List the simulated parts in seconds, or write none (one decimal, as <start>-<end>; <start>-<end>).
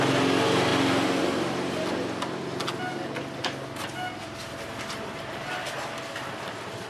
none